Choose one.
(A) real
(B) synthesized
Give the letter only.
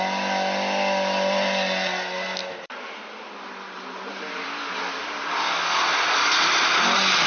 A